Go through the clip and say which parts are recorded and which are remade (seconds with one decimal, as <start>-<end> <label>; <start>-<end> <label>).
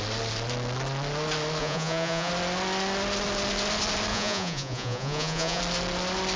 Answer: 0.0-1.6 recorded; 1.6-2.3 remade; 2.3-4.1 recorded; 4.1-5.6 remade; 5.6-6.4 recorded